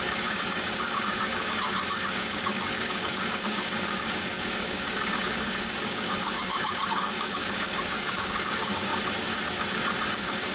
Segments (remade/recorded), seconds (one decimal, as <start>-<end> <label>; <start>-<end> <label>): 0.0-8.9 remade; 8.9-10.1 recorded; 10.1-10.5 remade